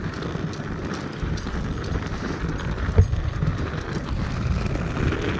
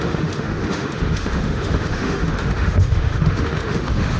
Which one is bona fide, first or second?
first